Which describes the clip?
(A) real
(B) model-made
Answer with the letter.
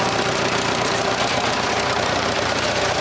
B